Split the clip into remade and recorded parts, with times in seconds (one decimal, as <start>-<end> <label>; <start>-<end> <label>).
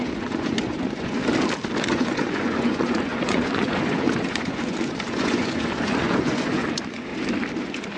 0.0-1.2 remade; 1.2-1.9 recorded; 1.9-7.1 remade; 7.1-7.6 recorded; 7.6-8.0 remade